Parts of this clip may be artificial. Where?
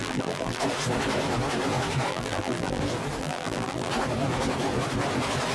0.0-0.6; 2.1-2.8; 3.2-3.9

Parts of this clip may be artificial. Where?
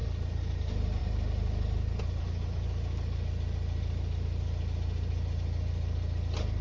0.0-0.6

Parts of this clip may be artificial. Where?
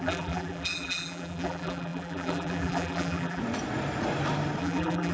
0.0-3.4; 4.6-5.1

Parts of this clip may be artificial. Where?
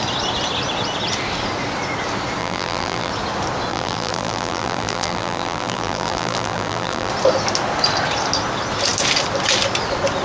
2.4-3.1; 3.7-7.1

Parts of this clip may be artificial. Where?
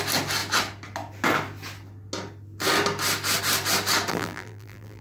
4.1-5.0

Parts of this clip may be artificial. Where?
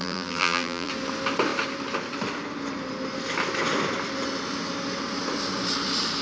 0.0-0.9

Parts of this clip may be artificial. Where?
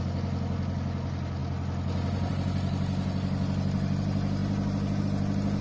none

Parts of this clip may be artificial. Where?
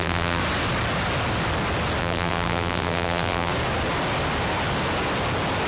0.0-0.4; 2.0-3.5